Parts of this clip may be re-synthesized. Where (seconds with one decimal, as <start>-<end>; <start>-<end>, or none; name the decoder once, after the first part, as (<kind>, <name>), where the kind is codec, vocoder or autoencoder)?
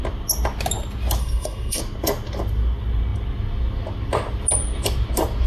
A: 1.2-1.8 (codec, SNAC)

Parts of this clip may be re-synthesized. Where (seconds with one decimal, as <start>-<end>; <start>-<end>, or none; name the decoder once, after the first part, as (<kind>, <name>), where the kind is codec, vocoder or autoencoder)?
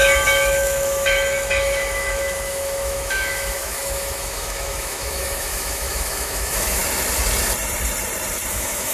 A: 0.0-6.8 (autoencoder, DAC-VAE); 8.5-8.9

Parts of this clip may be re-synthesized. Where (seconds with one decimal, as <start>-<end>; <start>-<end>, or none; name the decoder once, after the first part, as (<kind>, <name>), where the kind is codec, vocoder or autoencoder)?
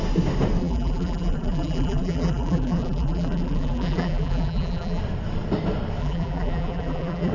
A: 0.6-5.0 (vocoder, BigVGAN v2); 6.0-7.3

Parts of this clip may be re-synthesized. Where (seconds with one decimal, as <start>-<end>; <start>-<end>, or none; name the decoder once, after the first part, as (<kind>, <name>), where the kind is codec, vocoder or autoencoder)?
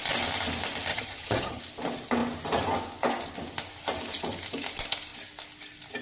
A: 0.9-1.6 (vocoder, HiFi-GAN)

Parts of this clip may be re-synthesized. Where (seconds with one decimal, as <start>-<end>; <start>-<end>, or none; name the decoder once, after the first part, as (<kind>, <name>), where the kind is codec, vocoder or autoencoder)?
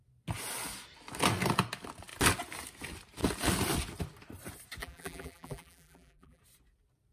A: 4.8-6.4 (vocoder, BigVGAN v2)